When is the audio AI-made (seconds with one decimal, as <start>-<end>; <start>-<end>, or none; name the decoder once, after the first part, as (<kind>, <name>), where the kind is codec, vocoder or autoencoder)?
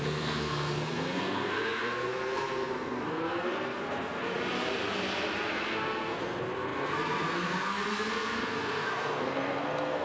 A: 0.0-4.3 (codec, SNAC); 5.5-10.0